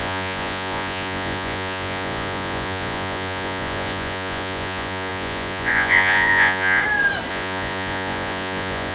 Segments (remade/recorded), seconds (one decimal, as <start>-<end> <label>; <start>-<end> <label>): 0.0-6.8 remade; 6.8-7.3 recorded; 7.3-8.9 remade